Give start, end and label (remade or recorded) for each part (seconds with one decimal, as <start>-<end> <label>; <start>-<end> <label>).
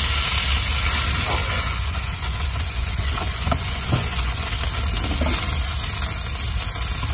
0.0-1.4 recorded; 1.4-4.5 remade; 4.5-7.1 recorded